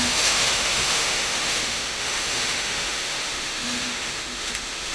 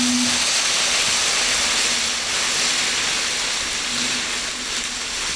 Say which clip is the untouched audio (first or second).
second